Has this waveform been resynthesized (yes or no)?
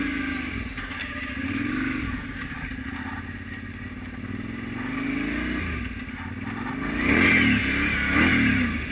no